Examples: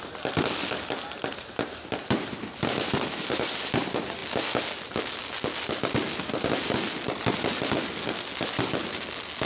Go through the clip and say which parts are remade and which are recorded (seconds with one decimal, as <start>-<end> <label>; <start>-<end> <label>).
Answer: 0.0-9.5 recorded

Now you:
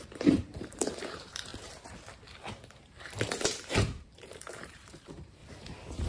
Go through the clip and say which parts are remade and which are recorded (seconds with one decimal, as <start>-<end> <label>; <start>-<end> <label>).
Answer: 0.0-1.5 remade; 1.5-2.8 recorded; 2.8-5.4 remade; 5.4-6.1 recorded

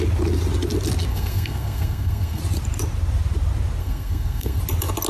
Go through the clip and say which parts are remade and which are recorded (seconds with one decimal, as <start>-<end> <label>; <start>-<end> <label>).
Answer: 0.0-1.1 recorded; 1.1-2.4 remade; 2.4-3.8 recorded; 3.8-4.6 remade; 4.6-5.1 recorded

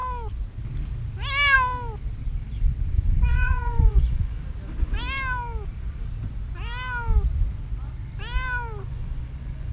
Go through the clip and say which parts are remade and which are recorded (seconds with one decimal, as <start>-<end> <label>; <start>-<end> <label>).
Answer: 0.0-3.3 recorded; 3.3-4.4 remade; 4.4-8.9 recorded; 8.9-9.7 remade

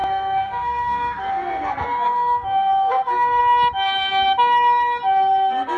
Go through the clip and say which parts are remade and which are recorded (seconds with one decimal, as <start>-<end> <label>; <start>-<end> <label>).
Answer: 0.0-3.4 remade; 3.4-5.8 recorded